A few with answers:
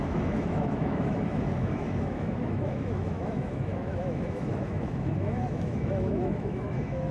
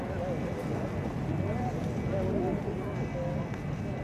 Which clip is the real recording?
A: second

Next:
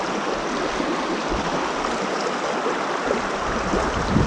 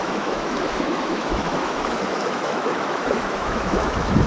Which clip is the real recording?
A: first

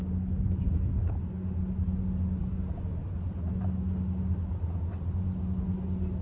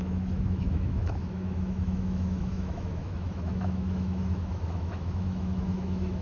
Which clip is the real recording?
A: first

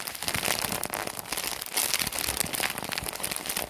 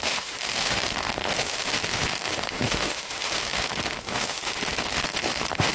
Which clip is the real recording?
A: first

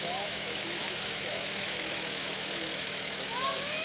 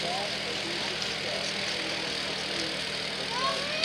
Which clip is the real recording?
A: second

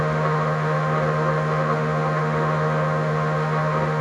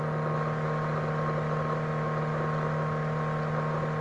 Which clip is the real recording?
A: second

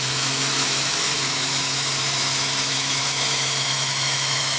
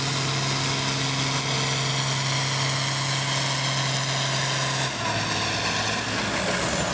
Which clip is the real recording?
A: second